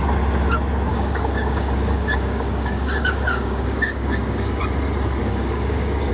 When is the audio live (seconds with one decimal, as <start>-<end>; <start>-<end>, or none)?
0.0-0.9; 4.6-5.2